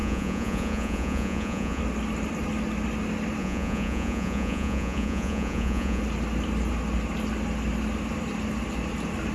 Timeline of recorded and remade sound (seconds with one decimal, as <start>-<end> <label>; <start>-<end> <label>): 0.0-1.8 remade; 1.8-3.4 recorded; 3.4-6.0 remade; 6.0-9.3 recorded